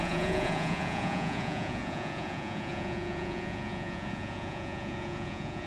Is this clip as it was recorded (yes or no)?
no